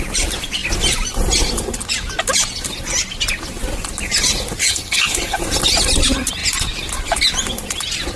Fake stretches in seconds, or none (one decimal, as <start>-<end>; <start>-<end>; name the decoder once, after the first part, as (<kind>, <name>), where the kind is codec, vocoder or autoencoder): 4.6-5.4 (codec, HILCodec)